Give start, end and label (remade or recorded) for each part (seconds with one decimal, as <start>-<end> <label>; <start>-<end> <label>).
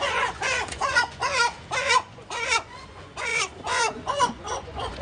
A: 0.0-1.2 remade; 1.2-1.8 recorded; 1.8-5.0 remade